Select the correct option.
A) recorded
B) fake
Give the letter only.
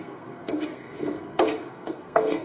B